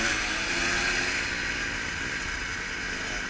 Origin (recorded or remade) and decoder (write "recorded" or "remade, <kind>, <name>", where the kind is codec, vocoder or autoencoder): recorded